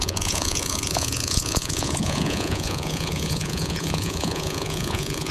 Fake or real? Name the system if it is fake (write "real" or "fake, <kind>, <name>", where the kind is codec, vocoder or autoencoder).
fake, vocoder, Vocos